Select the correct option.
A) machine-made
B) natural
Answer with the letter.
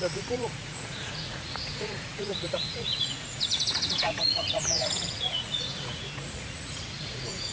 A